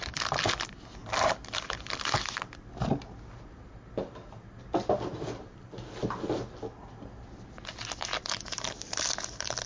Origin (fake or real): real